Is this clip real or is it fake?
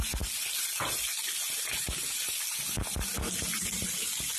real